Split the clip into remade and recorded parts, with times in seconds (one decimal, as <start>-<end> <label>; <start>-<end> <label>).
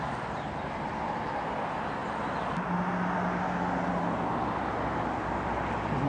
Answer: 0.0-6.1 recorded